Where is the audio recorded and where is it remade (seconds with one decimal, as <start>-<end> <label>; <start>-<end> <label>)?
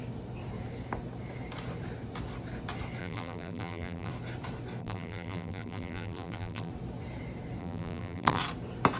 0.0-3.0 recorded; 3.0-4.1 remade; 4.1-4.8 recorded; 4.8-6.7 remade; 6.7-7.6 recorded; 7.6-8.4 remade; 8.4-9.0 recorded